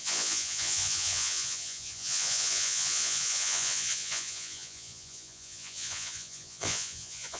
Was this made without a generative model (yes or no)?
no